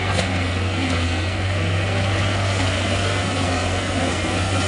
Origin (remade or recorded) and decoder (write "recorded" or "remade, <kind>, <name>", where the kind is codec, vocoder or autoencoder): remade, codec, SNAC